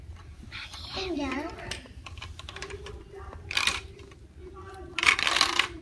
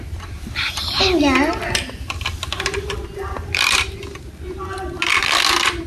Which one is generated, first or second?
first